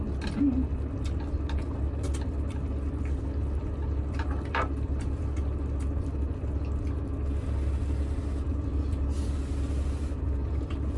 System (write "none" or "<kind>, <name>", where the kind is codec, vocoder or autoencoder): none